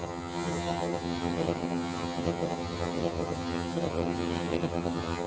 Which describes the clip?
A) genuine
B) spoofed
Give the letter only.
B